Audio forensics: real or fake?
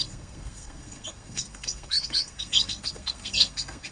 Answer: fake